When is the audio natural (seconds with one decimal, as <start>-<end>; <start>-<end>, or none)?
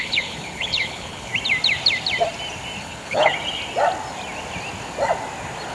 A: 1.3-2.8; 3.3-5.7